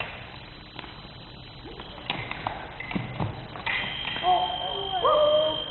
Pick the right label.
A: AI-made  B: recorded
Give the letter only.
B